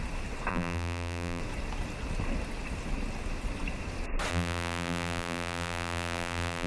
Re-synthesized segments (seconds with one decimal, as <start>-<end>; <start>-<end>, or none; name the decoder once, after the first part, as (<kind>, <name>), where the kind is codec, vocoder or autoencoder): 0.5-1.4 (vocoder, BigVGAN v2); 4.3-6.7